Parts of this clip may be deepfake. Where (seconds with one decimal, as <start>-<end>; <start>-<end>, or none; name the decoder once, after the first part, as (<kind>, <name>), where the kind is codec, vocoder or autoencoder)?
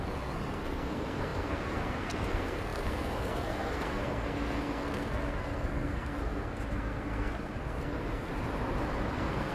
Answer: 0.0-8.3 (codec, SNAC); 9.1-9.5